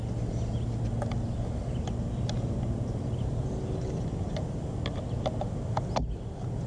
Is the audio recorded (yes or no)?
yes